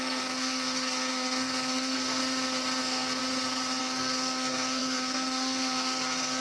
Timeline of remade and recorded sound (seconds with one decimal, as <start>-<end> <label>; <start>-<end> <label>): 0.0-2.2 remade; 2.2-2.8 recorded; 2.8-3.2 remade; 3.2-3.8 recorded; 3.8-6.4 remade